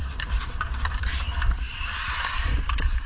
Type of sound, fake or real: fake